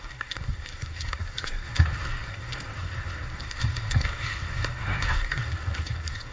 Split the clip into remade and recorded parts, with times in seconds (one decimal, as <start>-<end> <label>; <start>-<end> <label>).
0.0-6.3 remade